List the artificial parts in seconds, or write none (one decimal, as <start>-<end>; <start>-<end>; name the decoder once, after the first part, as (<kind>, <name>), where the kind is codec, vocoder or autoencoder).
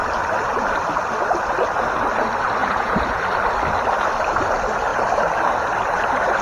2.6-3.2 (vocoder, Vocos)